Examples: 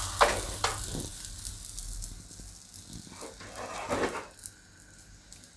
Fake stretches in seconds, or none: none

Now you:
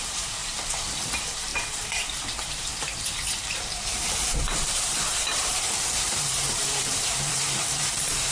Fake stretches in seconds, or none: 0.0-8.3 (vocoder, BigVGAN v2)

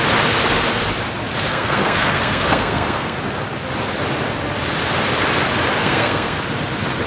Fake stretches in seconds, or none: 1.5-3.2 (codec, SNAC); 5.8-6.4

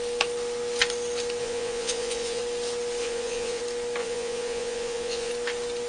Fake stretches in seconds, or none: 1.4-2.4 (vocoder, Vocos); 3.0-3.6; 4.0-5.3

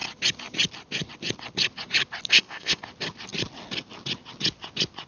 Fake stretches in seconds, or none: 2.3-2.8 (codec, ZipCodec)

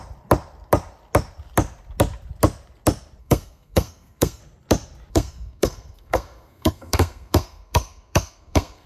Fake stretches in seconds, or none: 3.2-4.4 (codec, SNAC); 5.1-8.9